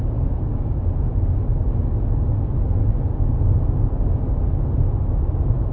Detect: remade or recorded recorded